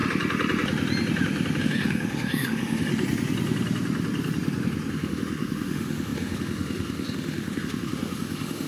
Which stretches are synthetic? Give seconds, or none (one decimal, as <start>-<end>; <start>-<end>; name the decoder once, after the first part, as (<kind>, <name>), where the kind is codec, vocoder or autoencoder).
1.6-2.9 (autoencoder, DAC-VAE); 4.9-8.7